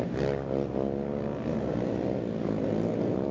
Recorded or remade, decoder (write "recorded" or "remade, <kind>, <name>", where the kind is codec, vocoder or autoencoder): recorded